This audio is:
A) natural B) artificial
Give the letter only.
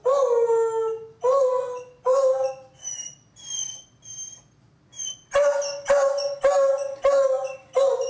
A